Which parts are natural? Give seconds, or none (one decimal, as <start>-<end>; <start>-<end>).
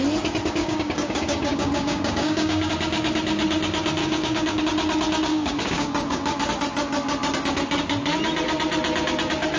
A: 0.0-0.6; 2.7-4.0; 4.6-5.3; 6.4-9.6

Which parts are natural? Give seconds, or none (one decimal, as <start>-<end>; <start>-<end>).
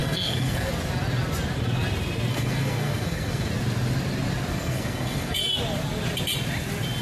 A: 0.7-2.3; 3.5-4.5; 5.4-7.0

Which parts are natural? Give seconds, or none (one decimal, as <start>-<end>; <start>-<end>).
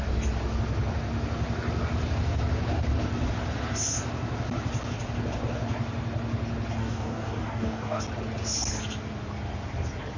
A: 0.0-6.8; 8.0-10.2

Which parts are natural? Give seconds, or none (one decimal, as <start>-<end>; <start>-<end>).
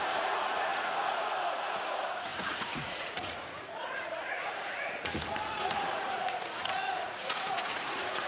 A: none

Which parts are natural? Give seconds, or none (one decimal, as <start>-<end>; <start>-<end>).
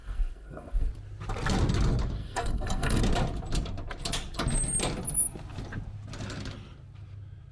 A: 0.9-2.2; 3.0-7.5